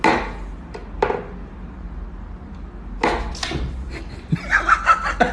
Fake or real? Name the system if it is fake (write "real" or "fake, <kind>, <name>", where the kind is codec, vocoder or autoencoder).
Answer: real